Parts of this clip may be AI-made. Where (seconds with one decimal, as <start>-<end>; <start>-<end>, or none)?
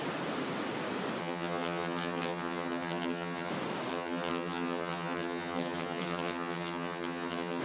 1.2-3.5; 3.9-7.6